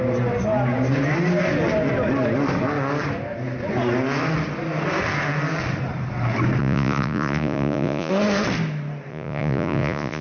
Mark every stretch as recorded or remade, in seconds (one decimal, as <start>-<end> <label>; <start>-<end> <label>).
0.0-6.6 recorded; 6.6-8.1 remade; 8.1-9.1 recorded; 9.1-10.2 remade